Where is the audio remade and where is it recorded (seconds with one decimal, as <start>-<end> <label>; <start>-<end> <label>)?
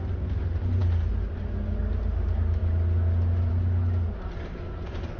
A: 0.0-5.2 recorded